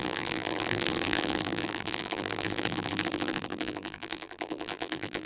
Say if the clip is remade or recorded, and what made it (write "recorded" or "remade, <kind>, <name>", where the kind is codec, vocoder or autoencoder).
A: remade, vocoder, BigVGAN v2